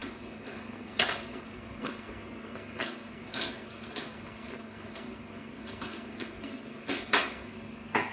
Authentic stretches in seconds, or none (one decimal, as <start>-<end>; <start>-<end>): none